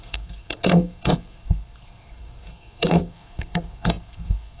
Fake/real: fake